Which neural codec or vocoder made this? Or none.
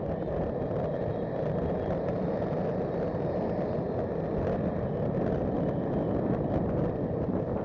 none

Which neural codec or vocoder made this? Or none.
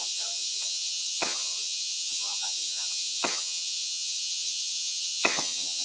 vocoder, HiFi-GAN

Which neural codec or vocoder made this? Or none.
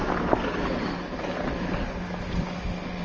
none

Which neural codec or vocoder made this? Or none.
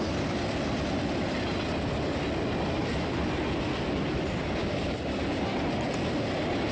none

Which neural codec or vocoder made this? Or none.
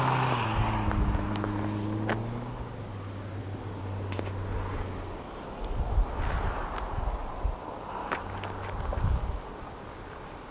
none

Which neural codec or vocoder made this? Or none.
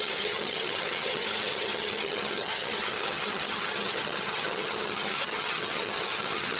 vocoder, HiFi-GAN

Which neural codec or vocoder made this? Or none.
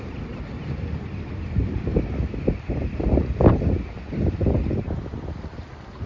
none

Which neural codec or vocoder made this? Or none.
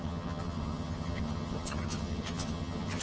vocoder, HiFi-GAN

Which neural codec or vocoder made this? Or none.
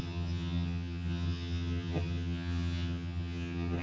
vocoder, HiFi-GAN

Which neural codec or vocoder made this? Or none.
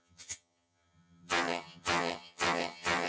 vocoder, HiFi-GAN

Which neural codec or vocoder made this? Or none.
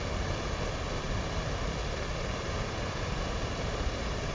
none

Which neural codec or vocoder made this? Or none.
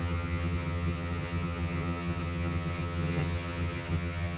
vocoder, HiFi-GAN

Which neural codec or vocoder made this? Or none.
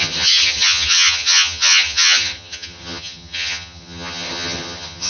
vocoder, HiFi-GAN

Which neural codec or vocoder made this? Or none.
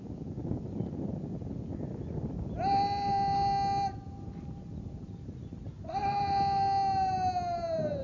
none